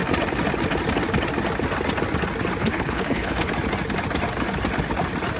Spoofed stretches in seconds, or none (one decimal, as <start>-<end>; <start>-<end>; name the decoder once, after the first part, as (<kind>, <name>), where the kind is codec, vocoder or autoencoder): 2.6-3.5 (codec, HILCodec)